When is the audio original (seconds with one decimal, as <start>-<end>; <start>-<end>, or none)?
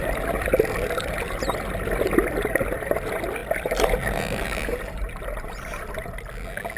0.0-3.4; 4.0-6.8